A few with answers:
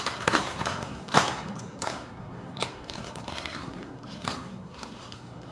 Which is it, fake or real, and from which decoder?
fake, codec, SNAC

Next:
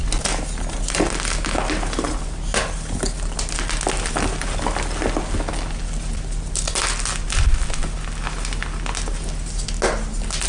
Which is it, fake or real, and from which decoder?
real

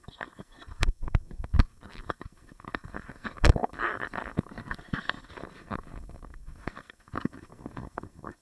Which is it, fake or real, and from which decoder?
fake, codec, SNAC